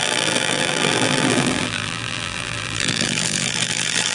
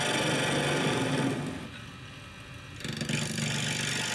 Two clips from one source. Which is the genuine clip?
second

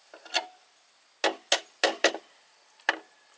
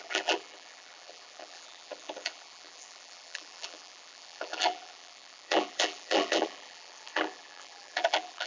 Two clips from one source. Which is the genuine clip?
first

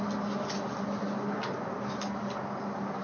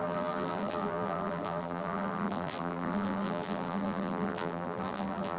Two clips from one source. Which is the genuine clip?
first